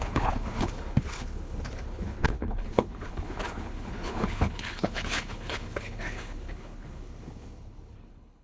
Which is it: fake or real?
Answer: fake